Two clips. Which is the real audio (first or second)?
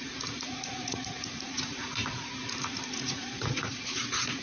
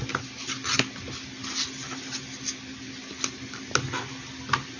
second